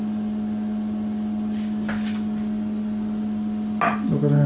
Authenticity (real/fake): real